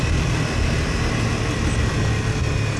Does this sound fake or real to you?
real